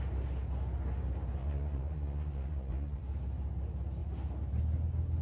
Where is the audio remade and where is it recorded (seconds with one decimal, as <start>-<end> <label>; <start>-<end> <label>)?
0.0-1.4 recorded; 1.4-3.0 remade; 3.0-5.2 recorded